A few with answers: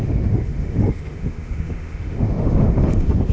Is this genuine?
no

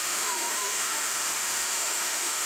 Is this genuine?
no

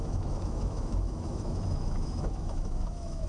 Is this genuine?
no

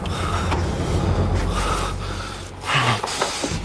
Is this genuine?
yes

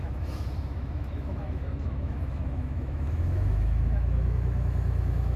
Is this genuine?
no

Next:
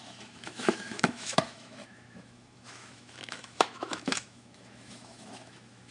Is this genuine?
no